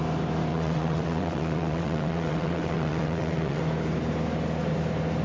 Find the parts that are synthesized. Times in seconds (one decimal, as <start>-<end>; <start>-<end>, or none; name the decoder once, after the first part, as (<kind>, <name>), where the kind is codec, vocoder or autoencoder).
0.5-3.6 (vocoder, WaveNeXt)